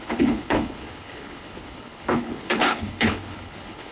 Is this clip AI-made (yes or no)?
yes